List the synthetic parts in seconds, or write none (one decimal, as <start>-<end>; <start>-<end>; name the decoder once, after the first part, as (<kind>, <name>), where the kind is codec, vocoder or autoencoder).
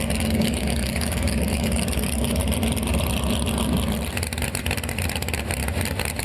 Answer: 0.0-2.4 (codec, DAC)